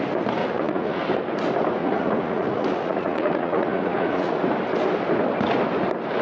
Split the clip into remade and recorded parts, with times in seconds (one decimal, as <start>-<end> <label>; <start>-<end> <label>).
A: 0.0-0.4 recorded; 0.4-1.0 remade; 1.0-1.8 recorded; 1.8-4.4 remade; 4.4-6.2 recorded

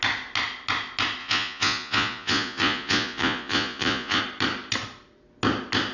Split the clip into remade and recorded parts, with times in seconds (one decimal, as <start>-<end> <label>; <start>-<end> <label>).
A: 0.0-1.2 recorded; 1.2-4.2 remade; 4.2-5.9 recorded